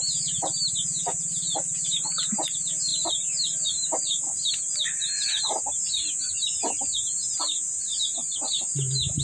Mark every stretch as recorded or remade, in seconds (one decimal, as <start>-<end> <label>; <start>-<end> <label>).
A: 0.0-9.2 recorded